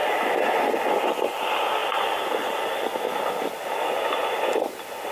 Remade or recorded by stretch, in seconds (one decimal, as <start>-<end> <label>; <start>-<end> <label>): 0.0-1.8 recorded; 1.8-3.2 remade; 3.2-5.1 recorded